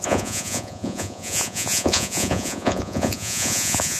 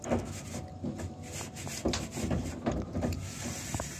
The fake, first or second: first